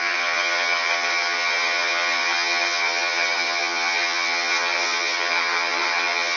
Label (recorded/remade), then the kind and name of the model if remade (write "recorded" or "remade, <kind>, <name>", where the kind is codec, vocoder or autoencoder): remade, vocoder, HiFi-GAN